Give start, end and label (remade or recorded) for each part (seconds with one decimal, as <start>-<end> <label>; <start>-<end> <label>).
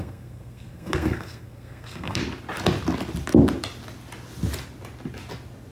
0.0-2.2 remade; 2.2-5.7 recorded